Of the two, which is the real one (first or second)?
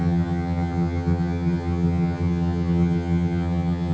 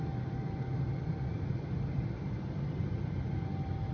second